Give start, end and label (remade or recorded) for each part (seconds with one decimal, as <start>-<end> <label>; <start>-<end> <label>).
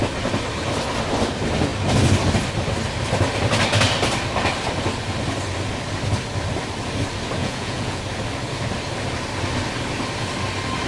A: 0.0-7.4 recorded; 7.4-8.0 remade; 8.0-10.9 recorded